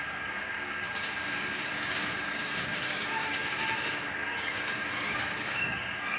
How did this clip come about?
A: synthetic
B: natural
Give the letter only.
A